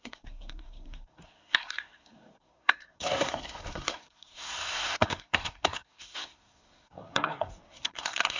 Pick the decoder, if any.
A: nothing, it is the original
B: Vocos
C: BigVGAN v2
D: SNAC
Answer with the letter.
D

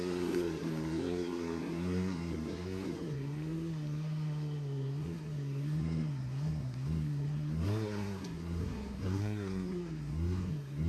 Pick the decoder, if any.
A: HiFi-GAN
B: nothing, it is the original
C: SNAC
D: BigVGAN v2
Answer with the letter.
C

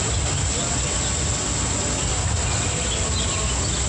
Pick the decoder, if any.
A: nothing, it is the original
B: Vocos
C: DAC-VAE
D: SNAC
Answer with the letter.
A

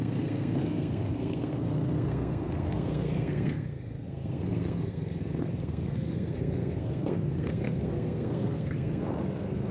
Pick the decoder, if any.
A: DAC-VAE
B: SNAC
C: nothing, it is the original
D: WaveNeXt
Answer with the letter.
B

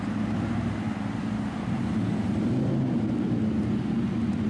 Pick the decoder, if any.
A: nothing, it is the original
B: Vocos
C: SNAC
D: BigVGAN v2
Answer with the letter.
A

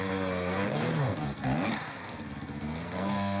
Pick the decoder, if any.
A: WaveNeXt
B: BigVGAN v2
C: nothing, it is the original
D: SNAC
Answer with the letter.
D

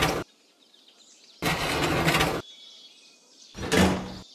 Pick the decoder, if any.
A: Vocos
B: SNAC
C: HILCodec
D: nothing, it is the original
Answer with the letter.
D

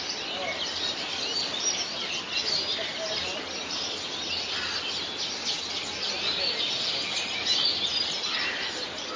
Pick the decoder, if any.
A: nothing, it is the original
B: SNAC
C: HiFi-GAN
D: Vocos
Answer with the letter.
A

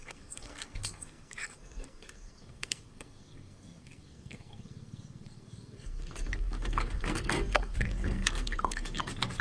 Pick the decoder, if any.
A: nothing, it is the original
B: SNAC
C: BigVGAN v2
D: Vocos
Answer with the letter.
B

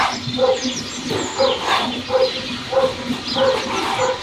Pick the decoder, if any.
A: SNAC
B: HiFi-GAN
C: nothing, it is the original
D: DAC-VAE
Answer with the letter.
C